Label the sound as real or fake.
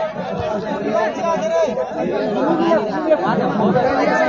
real